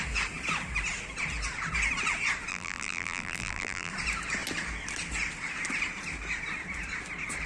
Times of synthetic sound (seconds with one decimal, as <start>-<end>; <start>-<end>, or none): 2.5-3.9

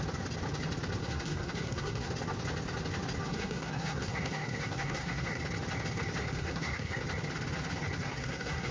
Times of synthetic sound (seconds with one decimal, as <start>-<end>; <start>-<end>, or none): 1.0-2.1; 3.3-5.4; 6.2-7.0; 8.0-8.7

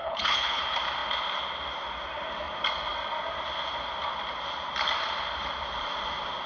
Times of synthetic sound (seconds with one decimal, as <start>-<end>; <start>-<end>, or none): 0.0-0.6